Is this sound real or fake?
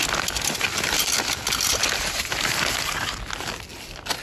real